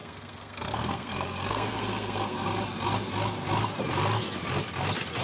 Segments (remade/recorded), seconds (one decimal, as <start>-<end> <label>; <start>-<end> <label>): 0.0-2.5 remade; 2.5-5.2 recorded